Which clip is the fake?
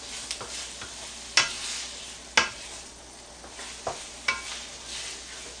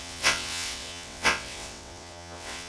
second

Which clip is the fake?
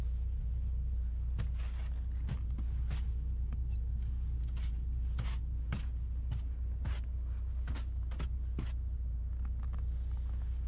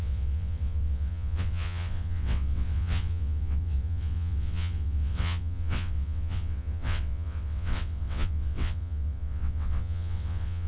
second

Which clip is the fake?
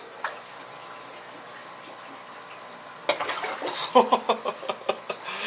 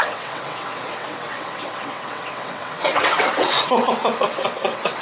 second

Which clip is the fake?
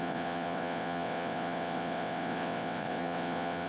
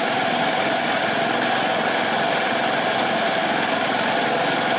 first